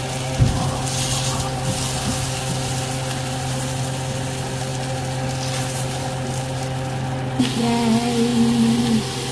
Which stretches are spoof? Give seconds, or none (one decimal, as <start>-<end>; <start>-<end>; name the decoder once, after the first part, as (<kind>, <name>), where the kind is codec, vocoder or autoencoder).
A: none